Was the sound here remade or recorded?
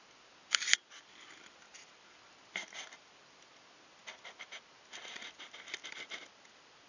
recorded